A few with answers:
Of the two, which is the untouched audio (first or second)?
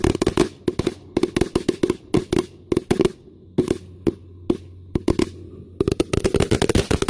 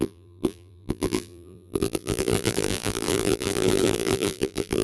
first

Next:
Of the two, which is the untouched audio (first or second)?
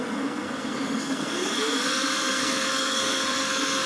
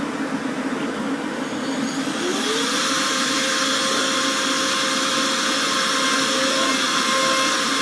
second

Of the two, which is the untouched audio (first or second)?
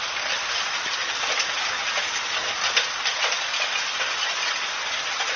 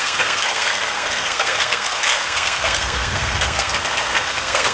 first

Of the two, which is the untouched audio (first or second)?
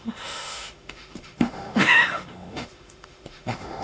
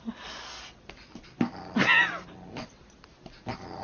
second